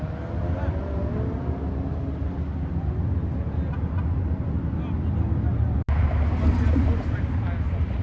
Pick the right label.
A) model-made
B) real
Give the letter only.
B